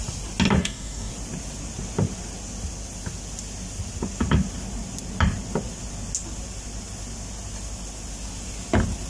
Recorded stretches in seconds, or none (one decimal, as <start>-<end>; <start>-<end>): 0.0-0.6; 1.1-9.1